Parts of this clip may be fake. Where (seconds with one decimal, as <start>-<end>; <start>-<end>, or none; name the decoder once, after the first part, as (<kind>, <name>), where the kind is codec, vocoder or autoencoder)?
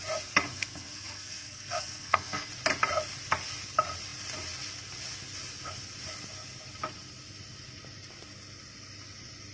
0.5-2.5 (codec, SNAC)